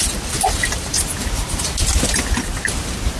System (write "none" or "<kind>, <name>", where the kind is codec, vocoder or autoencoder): none